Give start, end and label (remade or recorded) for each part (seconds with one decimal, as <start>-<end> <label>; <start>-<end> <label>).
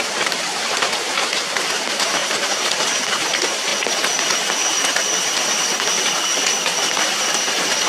0.0-3.7 remade; 3.7-7.4 recorded; 7.4-7.9 remade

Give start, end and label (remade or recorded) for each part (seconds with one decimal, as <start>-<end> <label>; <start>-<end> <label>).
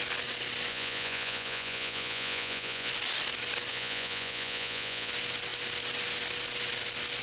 0.0-0.7 recorded; 0.7-2.9 remade; 2.9-3.7 recorded; 3.7-5.1 remade; 5.1-7.2 recorded